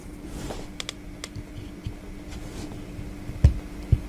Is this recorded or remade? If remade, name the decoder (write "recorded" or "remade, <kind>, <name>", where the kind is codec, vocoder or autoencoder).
recorded